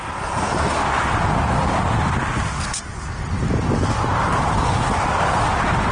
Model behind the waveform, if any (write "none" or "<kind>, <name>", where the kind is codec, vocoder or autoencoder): none